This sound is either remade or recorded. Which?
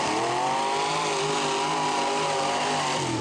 recorded